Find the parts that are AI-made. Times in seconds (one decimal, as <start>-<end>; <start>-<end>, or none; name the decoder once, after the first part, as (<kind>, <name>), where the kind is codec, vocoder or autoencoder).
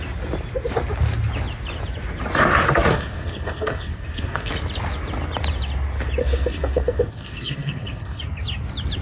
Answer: 2.9-4.5 (codec, SNAC); 6.2-8.2